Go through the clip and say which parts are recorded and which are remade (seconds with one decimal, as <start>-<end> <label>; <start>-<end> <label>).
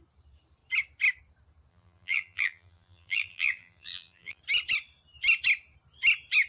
0.0-1.7 recorded; 1.7-4.4 remade; 4.4-6.5 recorded